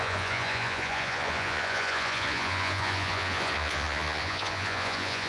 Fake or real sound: fake